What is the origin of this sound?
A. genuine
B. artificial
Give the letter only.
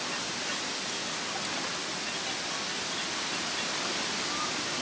A